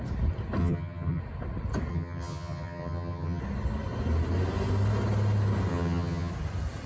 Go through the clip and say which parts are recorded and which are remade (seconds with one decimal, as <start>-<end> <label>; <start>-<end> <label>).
0.0-0.6 recorded; 0.6-1.2 remade; 1.2-1.9 recorded; 1.9-3.4 remade; 3.4-5.7 recorded; 5.7-6.3 remade; 6.3-6.9 recorded